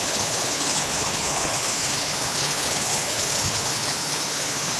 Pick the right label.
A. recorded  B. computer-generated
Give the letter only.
B